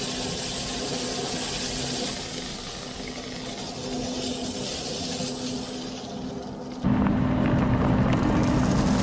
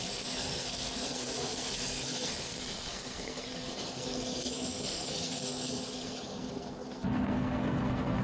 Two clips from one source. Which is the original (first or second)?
first